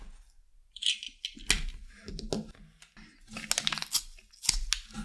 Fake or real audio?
real